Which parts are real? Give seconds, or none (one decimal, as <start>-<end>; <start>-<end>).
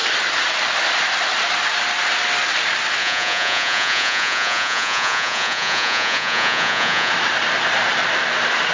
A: 0.0-3.0; 7.1-8.7